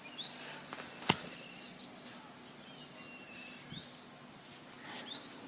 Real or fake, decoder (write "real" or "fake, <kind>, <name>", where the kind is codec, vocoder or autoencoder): real